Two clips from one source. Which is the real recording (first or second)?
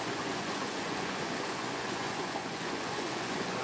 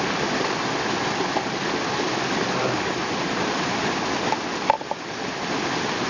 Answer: second